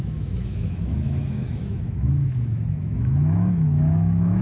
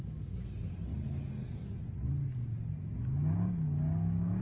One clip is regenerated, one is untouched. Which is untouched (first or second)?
second